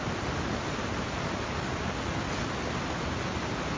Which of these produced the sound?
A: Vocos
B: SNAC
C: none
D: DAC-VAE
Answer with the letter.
C